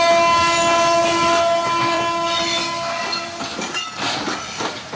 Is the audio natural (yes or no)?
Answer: yes